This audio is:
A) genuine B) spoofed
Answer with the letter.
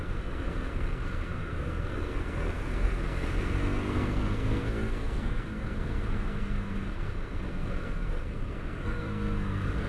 B